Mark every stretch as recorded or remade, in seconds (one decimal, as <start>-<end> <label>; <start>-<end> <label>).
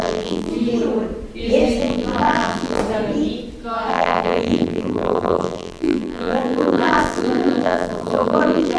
0.0-0.5 remade; 0.5-1.8 recorded; 1.8-2.8 remade; 2.8-3.9 recorded; 3.9-8.8 remade